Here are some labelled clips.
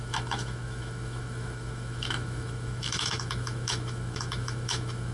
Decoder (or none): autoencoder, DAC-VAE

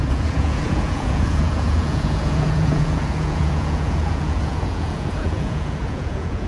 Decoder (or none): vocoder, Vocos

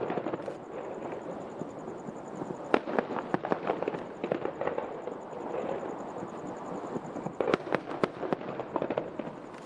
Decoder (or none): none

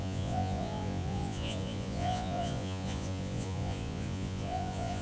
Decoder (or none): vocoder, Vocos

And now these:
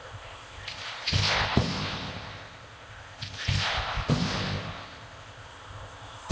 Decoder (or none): codec, ZipCodec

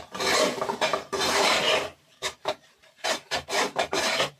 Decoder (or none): vocoder, BigVGAN v2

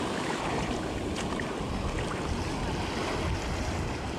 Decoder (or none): none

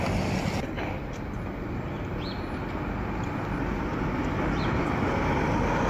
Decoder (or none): none